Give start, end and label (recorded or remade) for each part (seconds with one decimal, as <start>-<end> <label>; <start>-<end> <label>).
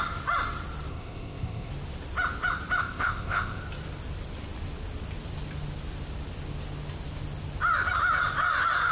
0.0-0.9 recorded; 0.9-1.7 remade; 1.7-2.8 recorded; 2.8-3.6 remade; 3.6-8.9 recorded